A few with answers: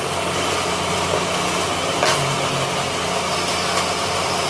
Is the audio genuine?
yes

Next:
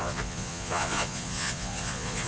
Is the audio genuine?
no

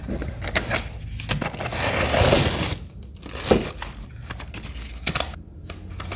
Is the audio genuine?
yes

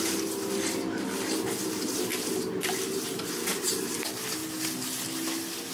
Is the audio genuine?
yes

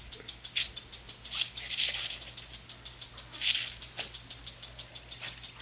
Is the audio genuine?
yes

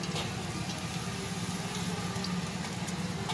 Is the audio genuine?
yes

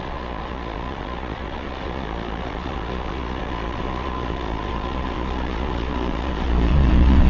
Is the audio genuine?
no